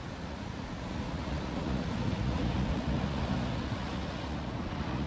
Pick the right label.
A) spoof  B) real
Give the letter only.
A